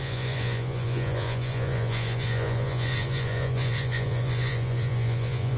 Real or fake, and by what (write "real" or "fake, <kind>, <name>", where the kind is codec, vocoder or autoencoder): fake, vocoder, Vocos